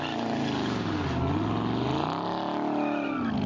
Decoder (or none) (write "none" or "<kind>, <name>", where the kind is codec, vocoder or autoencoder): none